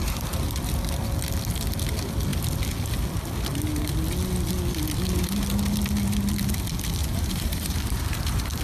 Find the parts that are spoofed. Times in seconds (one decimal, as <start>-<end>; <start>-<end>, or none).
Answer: 7.0-8.6